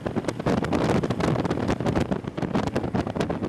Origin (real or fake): real